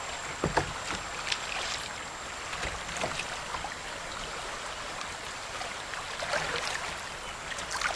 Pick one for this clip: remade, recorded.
recorded